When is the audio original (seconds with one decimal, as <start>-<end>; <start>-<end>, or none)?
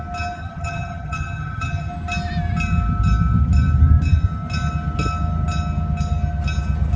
0.0-0.4; 1.9-7.0